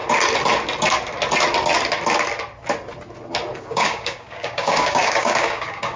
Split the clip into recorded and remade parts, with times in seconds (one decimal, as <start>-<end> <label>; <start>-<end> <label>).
0.0-3.6 recorded; 3.6-6.0 remade